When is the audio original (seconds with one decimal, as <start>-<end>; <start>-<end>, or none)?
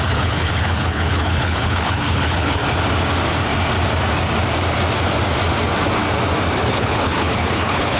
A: 2.6-6.7